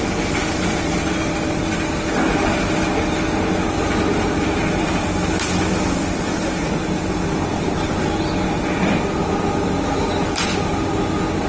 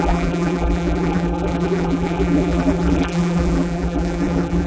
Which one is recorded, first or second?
first